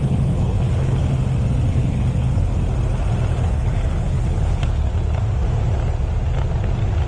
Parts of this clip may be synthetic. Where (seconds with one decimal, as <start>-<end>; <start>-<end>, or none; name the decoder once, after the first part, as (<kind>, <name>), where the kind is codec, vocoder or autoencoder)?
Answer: 0.0-1.0 (codec, HILCodec); 1.7-2.5; 3.3-4.9